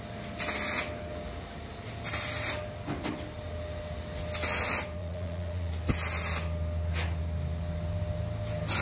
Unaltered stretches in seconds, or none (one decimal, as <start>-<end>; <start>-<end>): 0.0-5.0; 5.7-8.8